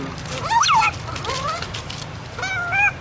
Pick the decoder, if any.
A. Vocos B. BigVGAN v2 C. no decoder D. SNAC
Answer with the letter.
C